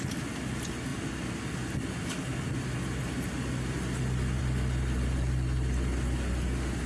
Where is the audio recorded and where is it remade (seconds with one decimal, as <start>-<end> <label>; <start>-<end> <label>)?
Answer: 0.0-6.9 recorded

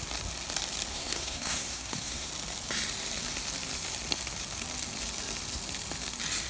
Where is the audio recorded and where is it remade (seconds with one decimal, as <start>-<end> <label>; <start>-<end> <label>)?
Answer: 0.0-0.9 recorded; 0.9-2.3 remade; 2.3-6.5 recorded

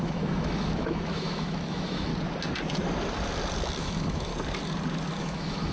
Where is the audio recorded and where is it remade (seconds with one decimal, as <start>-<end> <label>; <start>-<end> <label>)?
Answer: 0.0-2.1 remade; 2.1-3.8 recorded; 3.8-4.3 remade; 4.3-5.2 recorded; 5.2-5.7 remade

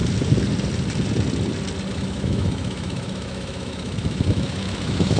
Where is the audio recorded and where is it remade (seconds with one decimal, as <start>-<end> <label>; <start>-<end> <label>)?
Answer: 0.0-1.9 recorded; 1.9-5.2 remade